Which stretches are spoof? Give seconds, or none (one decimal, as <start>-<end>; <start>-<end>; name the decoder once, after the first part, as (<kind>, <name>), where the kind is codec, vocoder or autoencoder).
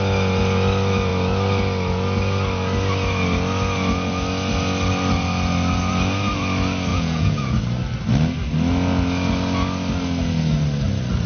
6.9-7.6 (vocoder, Vocos)